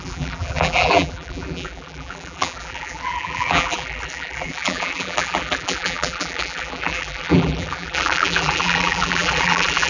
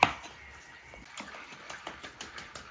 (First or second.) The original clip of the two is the second